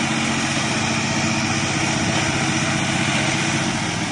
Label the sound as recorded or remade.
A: recorded